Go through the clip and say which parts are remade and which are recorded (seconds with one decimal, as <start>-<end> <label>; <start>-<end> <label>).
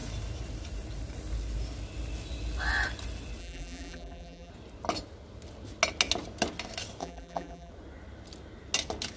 0.0-3.4 recorded; 3.4-4.5 remade; 4.5-7.0 recorded; 7.0-7.7 remade; 7.7-9.2 recorded